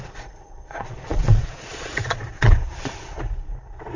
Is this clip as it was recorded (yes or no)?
no